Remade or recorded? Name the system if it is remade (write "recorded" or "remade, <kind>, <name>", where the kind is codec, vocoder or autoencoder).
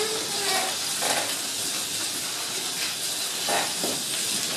recorded